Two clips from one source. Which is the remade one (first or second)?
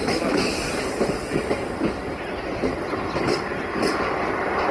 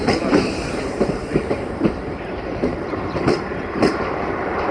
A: second